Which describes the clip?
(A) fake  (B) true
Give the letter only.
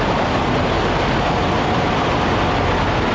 B